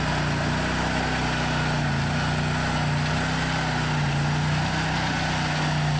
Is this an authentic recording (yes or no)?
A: yes